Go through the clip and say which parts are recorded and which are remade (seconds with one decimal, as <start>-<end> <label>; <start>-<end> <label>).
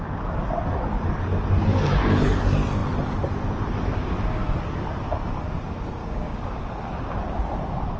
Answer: 0.0-6.0 recorded; 6.0-6.6 remade; 6.6-8.0 recorded